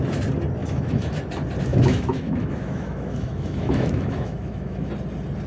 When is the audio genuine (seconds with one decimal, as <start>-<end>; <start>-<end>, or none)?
0.0-0.6; 1.2-1.7; 4.9-5.5